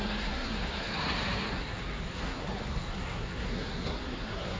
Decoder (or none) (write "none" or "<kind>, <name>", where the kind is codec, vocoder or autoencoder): codec, SNAC